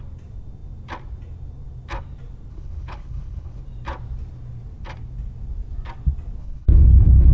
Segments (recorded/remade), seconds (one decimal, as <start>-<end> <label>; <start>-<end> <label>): 0.0-2.5 recorded; 2.5-3.6 remade; 3.6-6.4 recorded; 6.4-7.3 remade